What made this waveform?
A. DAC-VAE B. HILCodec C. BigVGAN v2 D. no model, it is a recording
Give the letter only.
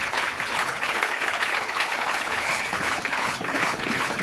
B